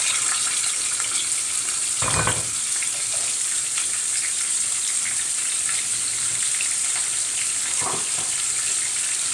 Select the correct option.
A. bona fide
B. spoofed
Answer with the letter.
A